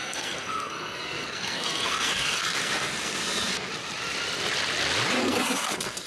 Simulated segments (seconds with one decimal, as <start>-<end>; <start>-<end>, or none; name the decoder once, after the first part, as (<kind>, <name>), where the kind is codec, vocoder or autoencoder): 0.0-3.7 (codec, SNAC); 5.2-6.1